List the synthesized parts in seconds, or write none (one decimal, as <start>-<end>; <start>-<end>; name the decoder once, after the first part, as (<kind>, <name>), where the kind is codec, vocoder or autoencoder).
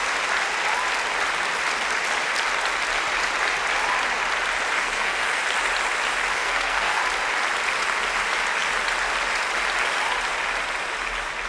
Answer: 4.8-5.4 (codec, SNAC); 6.3-7.0